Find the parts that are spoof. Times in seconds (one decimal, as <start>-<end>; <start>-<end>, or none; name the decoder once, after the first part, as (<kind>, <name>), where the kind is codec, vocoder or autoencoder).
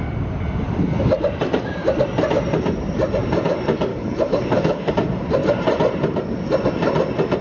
3.9-4.9 (codec, HILCodec)